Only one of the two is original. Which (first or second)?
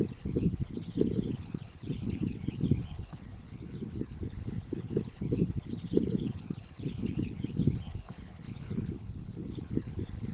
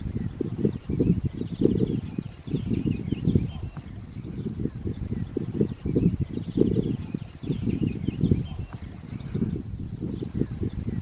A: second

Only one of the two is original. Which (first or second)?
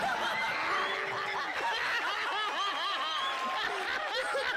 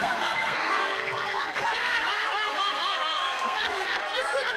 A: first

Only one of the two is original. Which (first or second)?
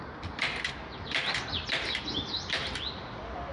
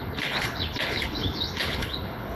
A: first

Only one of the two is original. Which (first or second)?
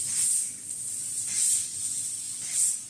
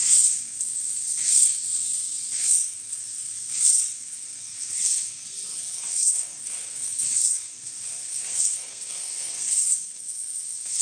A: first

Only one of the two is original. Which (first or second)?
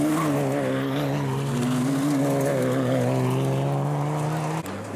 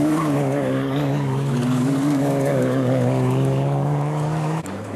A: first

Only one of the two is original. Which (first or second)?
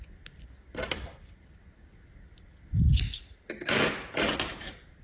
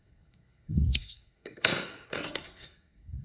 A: first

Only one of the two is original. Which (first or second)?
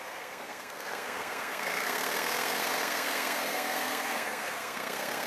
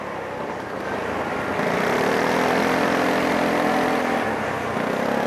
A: second